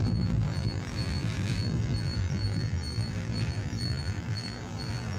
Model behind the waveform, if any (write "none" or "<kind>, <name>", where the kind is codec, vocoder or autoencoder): vocoder, BigVGAN v2